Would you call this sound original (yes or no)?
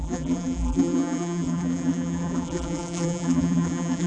no